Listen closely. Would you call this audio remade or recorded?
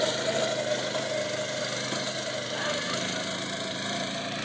recorded